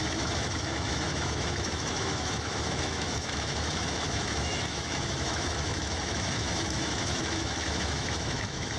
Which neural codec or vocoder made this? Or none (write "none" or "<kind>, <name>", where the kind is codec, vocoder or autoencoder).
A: autoencoder, DAC-VAE